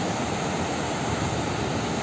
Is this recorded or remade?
recorded